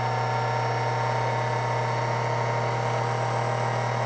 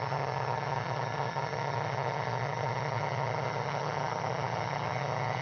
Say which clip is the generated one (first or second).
second